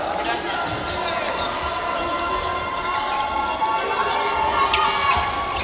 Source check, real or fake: real